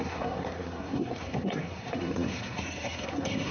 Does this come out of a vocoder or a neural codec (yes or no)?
yes